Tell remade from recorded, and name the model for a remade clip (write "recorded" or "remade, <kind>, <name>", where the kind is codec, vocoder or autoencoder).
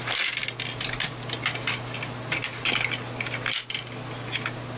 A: recorded